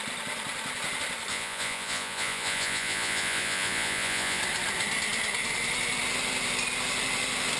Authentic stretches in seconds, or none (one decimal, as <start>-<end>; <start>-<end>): 0.0-1.3; 4.4-7.6